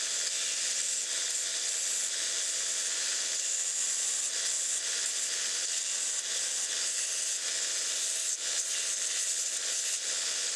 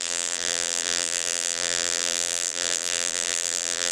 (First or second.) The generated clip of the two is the second